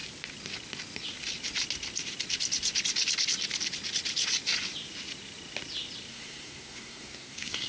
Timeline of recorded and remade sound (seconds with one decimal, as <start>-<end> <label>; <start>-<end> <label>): 0.0-6.1 recorded; 6.1-7.7 remade